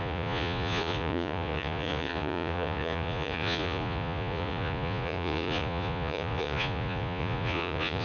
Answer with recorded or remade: remade